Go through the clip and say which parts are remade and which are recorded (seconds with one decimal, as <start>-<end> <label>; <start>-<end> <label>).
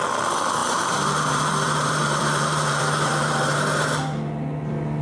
0.0-0.6 recorded; 0.6-3.6 remade; 3.6-5.0 recorded